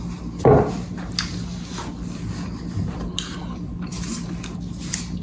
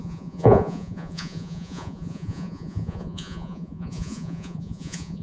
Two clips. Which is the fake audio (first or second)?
second